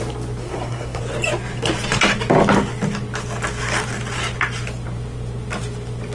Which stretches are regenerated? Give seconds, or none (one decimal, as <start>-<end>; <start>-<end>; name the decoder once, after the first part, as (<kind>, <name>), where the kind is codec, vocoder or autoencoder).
0.4-1.0 (codec, SNAC)